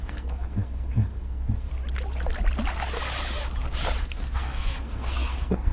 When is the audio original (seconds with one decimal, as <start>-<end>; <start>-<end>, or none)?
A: 1.7-4.0